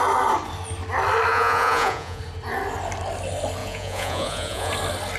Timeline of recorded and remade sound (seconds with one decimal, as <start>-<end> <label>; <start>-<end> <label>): 0.0-1.3 recorded; 1.3-2.2 remade; 2.2-3.6 recorded; 3.6-4.7 remade; 4.7-5.2 recorded